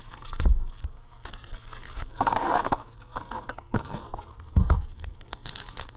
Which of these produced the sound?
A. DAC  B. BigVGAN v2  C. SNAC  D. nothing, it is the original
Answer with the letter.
C